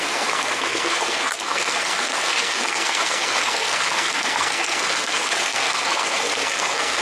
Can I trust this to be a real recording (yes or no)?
no